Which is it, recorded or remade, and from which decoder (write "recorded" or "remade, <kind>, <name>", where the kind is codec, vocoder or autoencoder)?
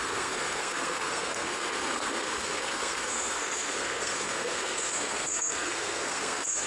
remade, codec, SNAC